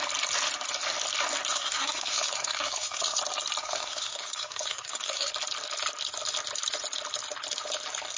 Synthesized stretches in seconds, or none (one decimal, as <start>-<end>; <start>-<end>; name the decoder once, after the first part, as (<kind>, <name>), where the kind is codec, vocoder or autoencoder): 1.5-3.2 (codec, SNAC); 3.6-5.3